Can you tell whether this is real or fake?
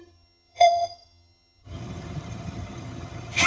fake